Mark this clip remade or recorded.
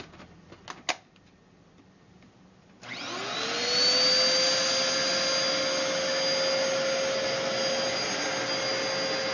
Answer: recorded